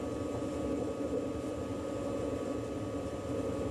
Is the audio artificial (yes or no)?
no